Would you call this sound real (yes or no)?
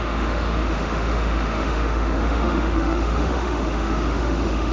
no